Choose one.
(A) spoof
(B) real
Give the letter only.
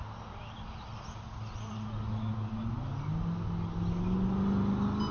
B